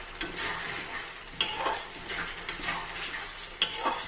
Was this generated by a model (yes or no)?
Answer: no